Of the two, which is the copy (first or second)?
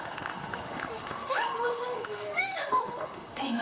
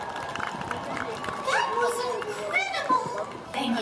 first